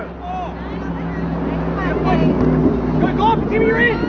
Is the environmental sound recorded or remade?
recorded